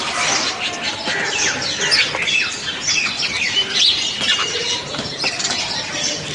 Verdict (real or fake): real